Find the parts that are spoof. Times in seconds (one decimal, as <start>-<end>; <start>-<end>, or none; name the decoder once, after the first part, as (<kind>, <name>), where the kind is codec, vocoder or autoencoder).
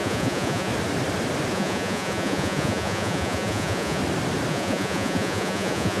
0.0-0.7 (vocoder, Vocos); 1.5-4.0; 4.5-6.0